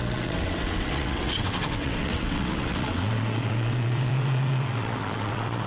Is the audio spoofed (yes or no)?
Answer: yes